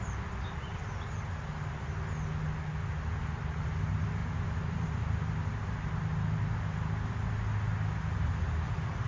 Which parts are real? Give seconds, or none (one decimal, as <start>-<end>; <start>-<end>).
0.0-4.2; 5.9-9.1